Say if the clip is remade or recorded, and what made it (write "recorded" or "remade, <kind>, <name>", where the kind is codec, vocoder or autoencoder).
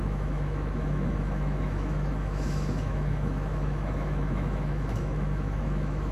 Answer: remade, autoencoder, DAC-VAE